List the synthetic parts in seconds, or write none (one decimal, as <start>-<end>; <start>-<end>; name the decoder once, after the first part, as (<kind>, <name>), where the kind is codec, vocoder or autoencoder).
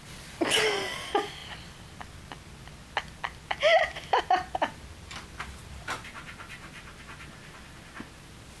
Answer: none